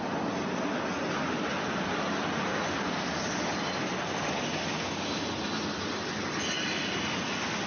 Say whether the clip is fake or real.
real